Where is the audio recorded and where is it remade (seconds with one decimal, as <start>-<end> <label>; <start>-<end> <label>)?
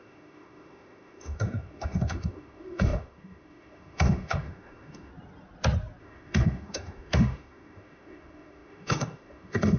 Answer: 0.0-5.1 remade; 5.1-6.0 recorded; 6.0-9.8 remade